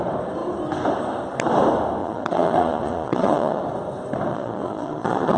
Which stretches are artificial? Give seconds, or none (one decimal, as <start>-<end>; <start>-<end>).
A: 2.0-3.6; 4.3-5.4